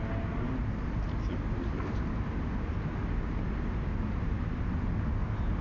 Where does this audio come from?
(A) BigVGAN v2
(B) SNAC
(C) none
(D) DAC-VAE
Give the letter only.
C